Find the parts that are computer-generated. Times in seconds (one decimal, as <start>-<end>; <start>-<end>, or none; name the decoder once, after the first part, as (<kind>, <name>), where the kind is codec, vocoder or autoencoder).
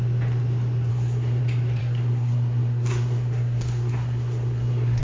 0.9-1.4 (codec, SNAC); 1.8-5.0